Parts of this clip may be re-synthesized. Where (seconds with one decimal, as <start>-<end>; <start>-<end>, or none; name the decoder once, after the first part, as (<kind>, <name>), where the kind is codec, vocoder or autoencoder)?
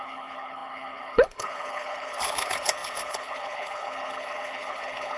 0.0-5.2 (codec, HILCodec)